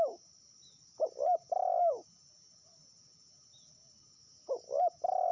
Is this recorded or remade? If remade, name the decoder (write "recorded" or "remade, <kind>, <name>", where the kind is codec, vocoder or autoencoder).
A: recorded